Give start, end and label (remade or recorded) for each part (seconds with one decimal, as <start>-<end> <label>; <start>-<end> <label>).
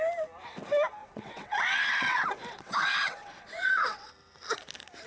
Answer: 0.0-1.0 recorded; 1.0-4.1 remade; 4.1-5.1 recorded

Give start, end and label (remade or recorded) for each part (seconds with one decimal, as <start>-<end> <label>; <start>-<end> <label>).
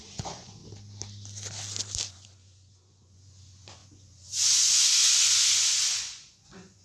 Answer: 0.0-0.6 remade; 0.6-2.1 recorded; 2.1-6.8 remade